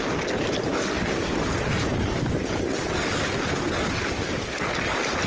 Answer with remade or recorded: recorded